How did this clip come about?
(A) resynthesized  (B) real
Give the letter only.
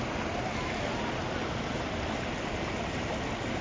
B